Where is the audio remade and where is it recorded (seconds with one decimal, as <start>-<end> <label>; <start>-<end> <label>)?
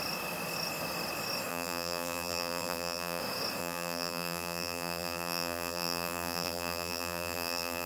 0.0-1.5 recorded; 1.5-3.2 remade; 3.2-3.6 recorded; 3.6-7.9 remade